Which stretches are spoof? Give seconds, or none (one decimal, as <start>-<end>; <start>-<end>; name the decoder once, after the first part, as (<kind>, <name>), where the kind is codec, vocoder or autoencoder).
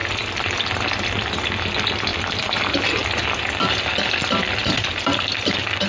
0.0-1.0 (vocoder, BigVGAN v2); 2.1-3.2; 4.6-5.3